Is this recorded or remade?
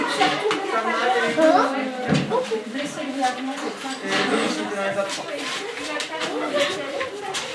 recorded